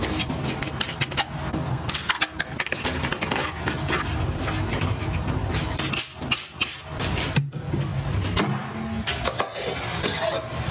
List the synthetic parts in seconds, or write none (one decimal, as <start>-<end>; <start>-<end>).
1.7-2.2